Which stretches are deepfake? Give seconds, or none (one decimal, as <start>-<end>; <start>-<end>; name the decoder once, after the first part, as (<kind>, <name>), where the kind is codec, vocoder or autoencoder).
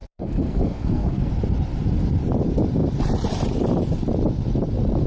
0.0-1.3 (codec, SNAC)